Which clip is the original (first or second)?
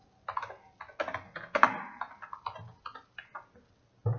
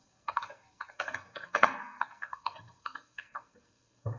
first